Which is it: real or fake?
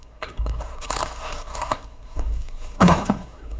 fake